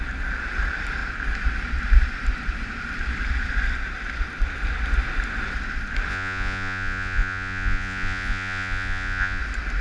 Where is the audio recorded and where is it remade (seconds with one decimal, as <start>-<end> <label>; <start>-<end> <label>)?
0.0-6.1 recorded; 6.1-9.4 remade; 9.4-9.8 recorded